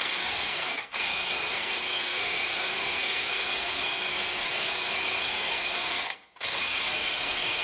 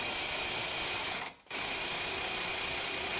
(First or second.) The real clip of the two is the second